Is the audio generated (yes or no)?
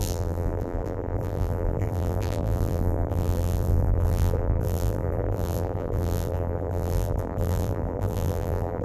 yes